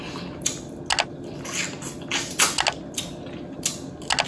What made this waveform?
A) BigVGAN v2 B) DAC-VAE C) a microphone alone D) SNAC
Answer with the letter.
C